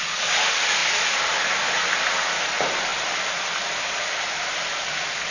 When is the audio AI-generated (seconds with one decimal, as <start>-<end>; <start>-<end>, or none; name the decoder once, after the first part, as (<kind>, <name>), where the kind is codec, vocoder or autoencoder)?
none